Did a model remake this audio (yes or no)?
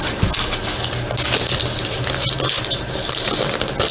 no